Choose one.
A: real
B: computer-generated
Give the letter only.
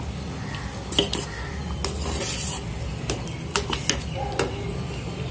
A